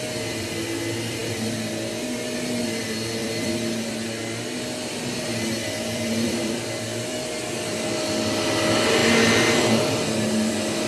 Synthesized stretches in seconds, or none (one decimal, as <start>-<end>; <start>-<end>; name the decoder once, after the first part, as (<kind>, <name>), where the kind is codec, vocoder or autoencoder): 3.2-3.9 (vocoder, BigVGAN v2); 5.6-7.9